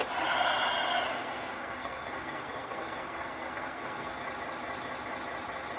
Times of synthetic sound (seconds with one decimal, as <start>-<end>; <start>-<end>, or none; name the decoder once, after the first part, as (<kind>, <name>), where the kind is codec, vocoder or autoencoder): 1.1-4.2 (codec, SNAC)